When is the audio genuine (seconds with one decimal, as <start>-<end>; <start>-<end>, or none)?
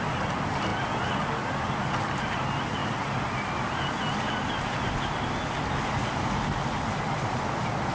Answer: 0.0-7.9